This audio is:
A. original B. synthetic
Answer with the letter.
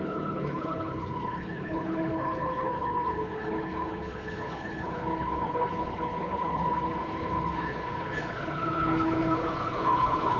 B